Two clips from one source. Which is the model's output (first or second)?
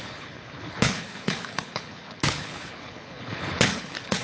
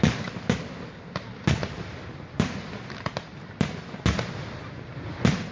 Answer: first